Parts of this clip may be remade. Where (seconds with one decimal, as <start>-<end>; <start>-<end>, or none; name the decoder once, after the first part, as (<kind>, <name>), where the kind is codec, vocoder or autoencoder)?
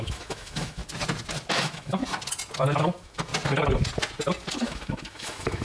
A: 0.0-0.8 (autoencoder, DAC-VAE); 1.6-2.0; 2.8-3.3; 4.5-5.6